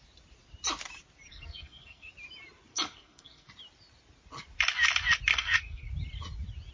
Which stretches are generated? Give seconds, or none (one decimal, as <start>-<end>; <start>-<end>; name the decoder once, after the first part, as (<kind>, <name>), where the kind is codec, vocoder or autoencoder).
1.3-2.1 (codec, SNAC); 2.7-3.5; 5.3-5.9